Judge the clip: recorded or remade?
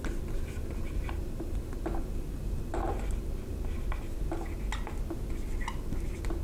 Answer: recorded